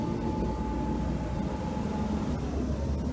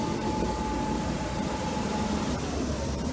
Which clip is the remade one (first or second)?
second